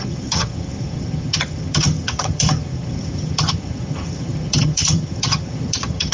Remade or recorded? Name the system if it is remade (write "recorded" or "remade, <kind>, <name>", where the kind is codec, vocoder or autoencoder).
remade, vocoder, HiFi-GAN